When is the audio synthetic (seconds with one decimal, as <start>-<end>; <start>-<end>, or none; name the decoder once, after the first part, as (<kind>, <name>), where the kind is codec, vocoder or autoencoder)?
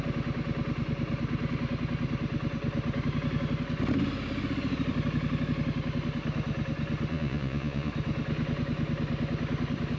7.1-7.9 (vocoder, Vocos)